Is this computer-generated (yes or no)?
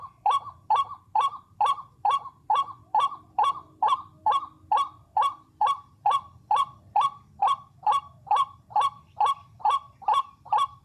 yes